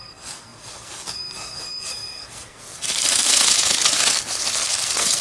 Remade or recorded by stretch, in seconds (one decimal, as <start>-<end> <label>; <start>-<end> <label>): 0.0-5.2 remade